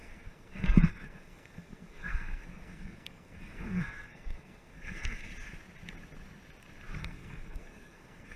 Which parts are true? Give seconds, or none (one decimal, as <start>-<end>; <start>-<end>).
5.3-7.0